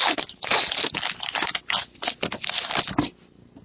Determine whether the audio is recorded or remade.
recorded